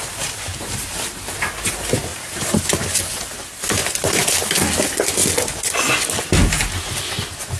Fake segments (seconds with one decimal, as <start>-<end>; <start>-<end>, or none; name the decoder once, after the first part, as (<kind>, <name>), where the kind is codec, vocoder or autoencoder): 0.5-1.7 (vocoder, BigVGAN v2); 2.1-2.6; 3.8-4.3